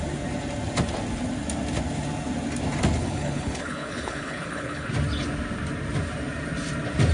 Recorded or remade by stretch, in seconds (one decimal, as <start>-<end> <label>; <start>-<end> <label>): 0.0-3.0 recorded; 3.0-4.9 remade; 4.9-7.1 recorded